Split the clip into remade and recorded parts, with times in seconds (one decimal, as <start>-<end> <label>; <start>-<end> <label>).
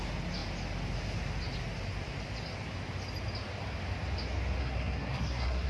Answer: 0.0-4.6 recorded; 4.6-5.7 remade